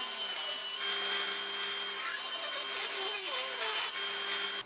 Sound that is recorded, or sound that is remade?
recorded